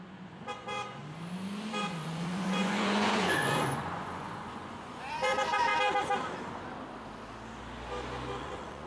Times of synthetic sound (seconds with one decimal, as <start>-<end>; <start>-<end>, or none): 0.0-1.0; 1.8-5.7; 8.4-8.9